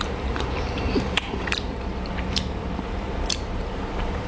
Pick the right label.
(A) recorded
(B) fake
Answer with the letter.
B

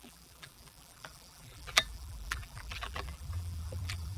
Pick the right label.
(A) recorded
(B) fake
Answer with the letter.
B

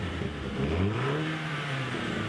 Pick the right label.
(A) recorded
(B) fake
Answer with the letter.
B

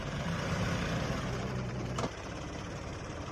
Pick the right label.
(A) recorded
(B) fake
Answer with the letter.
B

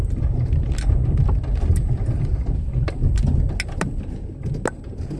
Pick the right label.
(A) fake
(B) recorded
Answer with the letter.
B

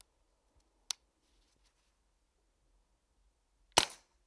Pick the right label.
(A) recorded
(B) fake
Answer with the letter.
A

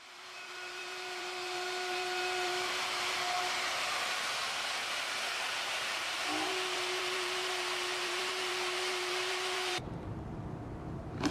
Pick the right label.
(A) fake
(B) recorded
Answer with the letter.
A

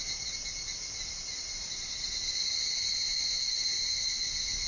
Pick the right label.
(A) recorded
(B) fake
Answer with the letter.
A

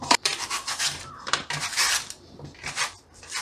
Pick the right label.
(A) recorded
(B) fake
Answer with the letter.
B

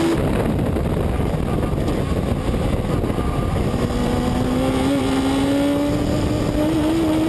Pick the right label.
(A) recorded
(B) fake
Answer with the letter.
A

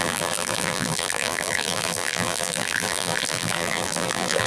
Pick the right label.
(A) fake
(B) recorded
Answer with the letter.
A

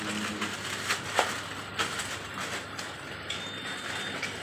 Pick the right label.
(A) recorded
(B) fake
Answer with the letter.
A